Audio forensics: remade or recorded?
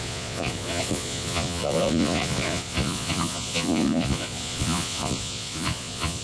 remade